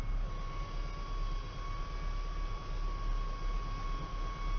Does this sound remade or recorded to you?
recorded